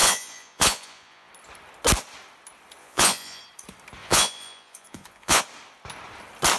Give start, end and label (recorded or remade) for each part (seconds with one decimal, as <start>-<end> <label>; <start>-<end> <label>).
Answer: 0.0-1.3 remade; 1.3-2.8 recorded; 2.8-3.4 remade; 3.4-4.0 recorded; 4.0-5.4 remade; 5.4-6.6 recorded